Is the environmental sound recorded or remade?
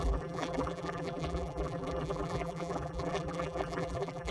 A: remade